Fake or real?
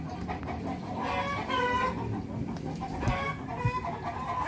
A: real